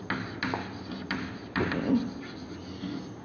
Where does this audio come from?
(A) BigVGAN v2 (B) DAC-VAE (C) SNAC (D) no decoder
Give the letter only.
D